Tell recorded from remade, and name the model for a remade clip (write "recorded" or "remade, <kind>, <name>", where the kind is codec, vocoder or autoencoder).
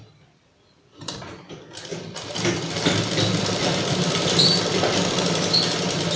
remade, vocoder, BigVGAN v2